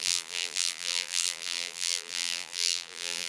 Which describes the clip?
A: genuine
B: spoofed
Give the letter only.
B